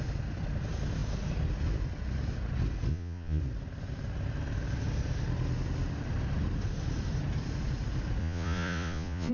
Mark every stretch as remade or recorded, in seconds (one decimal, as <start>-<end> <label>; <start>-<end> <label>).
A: 0.0-2.9 recorded; 2.9-3.4 remade; 3.4-8.2 recorded; 8.2-9.3 remade